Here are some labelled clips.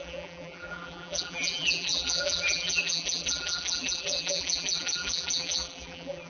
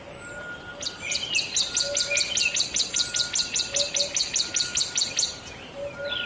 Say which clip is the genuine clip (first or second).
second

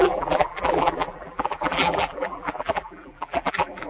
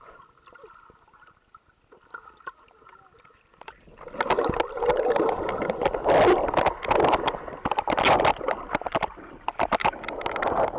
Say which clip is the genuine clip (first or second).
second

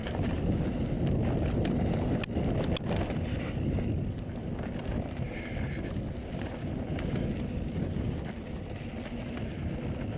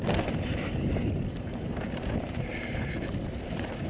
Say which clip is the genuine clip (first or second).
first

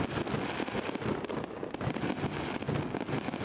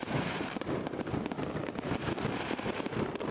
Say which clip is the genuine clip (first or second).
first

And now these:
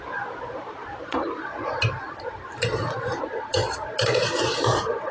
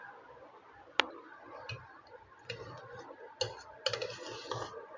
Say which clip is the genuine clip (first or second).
second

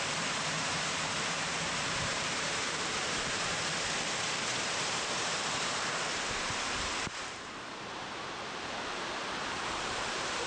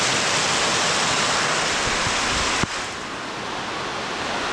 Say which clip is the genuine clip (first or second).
second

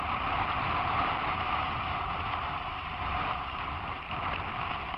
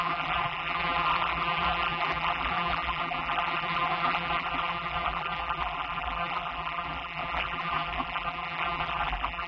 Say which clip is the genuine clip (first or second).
first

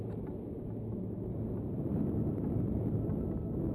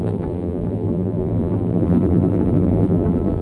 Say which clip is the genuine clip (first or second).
first